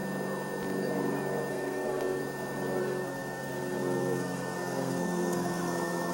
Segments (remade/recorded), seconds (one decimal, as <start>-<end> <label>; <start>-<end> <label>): 0.0-1.5 recorded; 1.5-2.2 remade; 2.2-2.8 recorded; 2.8-6.1 remade